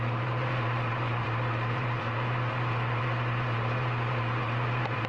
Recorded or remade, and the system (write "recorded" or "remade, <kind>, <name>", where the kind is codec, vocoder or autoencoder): remade, vocoder, BigVGAN v2